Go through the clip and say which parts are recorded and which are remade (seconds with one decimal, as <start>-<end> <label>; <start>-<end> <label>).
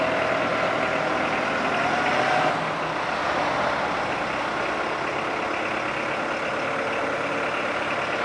0.0-8.2 recorded